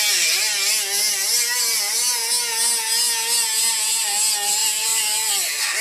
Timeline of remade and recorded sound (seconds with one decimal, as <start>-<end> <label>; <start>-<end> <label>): 0.0-4.6 recorded; 4.6-5.3 remade; 5.3-5.8 recorded

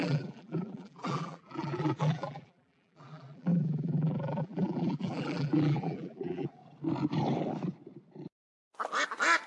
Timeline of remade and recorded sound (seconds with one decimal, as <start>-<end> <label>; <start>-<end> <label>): 0.0-6.6 remade; 6.6-9.5 recorded

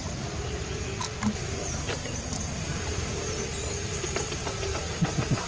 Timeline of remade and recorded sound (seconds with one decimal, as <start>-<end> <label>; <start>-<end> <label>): 0.0-0.9 remade; 0.9-3.9 recorded; 3.9-4.4 remade; 4.4-5.5 recorded

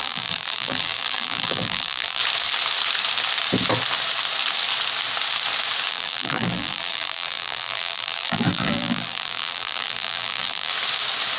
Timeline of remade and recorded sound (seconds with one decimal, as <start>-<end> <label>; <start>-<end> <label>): 0.0-2.2 remade; 2.2-5.9 recorded; 5.9-10.7 remade; 10.7-11.4 recorded

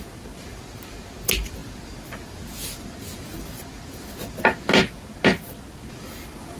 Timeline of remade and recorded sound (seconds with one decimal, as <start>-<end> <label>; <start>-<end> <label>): 0.0-6.6 recorded